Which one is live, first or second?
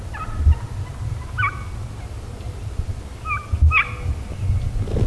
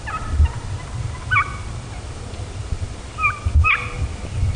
first